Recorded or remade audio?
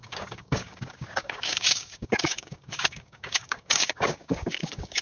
remade